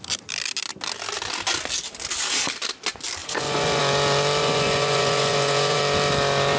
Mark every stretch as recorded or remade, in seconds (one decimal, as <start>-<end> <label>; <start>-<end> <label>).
0.0-3.2 recorded; 3.2-3.8 remade; 3.8-4.4 recorded; 4.4-5.8 remade; 5.8-6.6 recorded